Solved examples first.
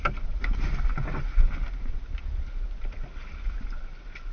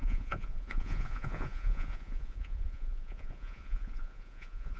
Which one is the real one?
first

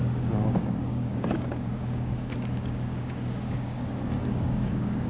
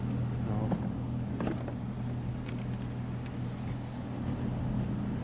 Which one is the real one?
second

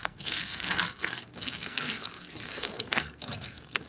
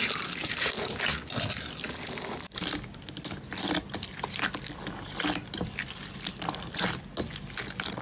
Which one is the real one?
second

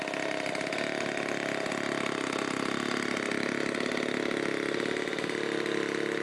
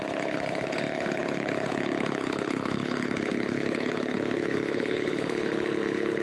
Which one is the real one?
first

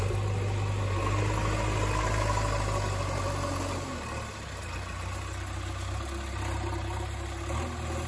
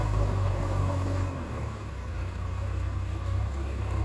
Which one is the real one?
first